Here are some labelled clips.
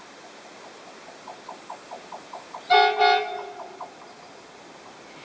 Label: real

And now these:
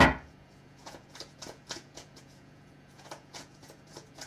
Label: fake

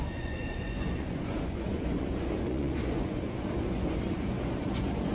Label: fake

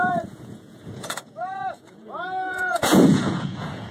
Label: fake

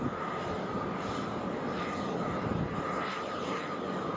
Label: real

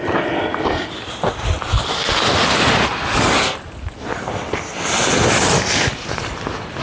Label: real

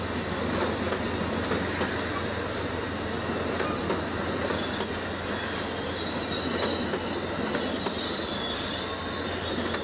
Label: real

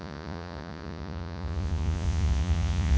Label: fake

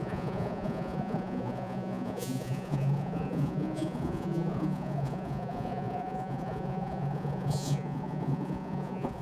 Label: fake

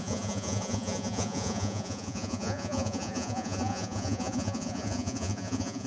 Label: fake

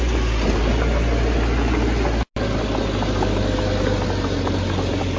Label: real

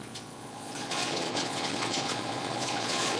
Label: fake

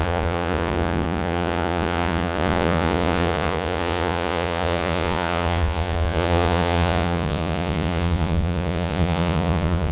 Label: fake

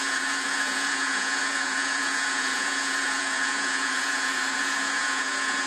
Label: fake